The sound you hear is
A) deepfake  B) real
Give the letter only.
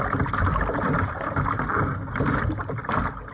B